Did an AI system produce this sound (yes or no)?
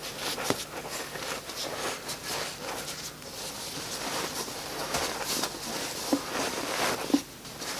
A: no